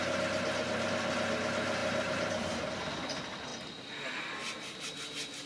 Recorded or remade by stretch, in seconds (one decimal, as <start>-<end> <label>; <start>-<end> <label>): 0.0-1.8 recorded; 1.8-2.8 remade; 2.8-5.5 recorded